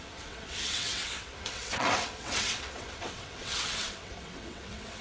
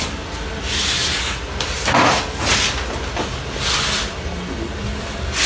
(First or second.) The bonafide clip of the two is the second